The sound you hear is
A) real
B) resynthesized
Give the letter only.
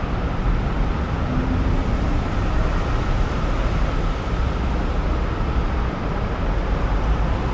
A